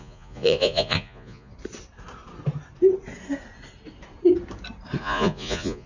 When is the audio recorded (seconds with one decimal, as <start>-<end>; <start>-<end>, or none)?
1.5-5.0